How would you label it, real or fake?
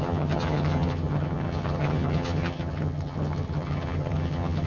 fake